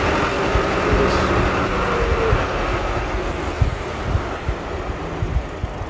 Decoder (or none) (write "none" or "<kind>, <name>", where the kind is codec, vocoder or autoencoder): none